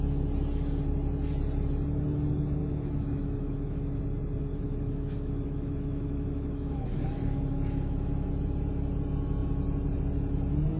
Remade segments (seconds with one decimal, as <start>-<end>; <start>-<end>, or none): 2.6-4.0; 4.5-8.3